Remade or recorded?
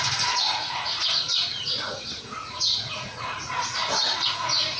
remade